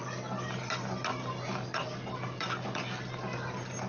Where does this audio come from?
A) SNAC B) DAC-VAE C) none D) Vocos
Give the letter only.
C